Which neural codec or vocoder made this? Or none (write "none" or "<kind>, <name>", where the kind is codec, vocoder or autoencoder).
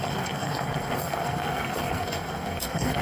codec, SNAC